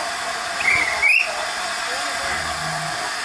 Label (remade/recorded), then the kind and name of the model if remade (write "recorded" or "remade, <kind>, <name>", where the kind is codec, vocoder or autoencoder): recorded